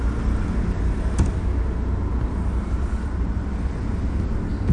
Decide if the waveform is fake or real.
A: real